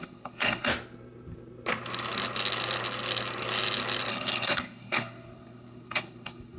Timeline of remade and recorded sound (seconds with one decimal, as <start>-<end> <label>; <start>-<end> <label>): 0.0-0.7 remade; 0.7-4.1 recorded; 4.1-6.6 remade